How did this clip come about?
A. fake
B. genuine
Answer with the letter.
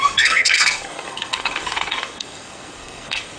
A